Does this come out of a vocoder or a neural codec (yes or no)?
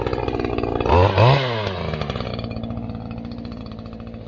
no